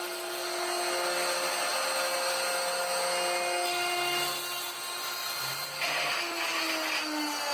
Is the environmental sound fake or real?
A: real